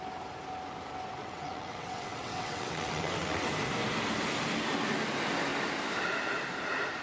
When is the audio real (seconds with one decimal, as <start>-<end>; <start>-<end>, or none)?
0.0-1.2; 3.5-7.0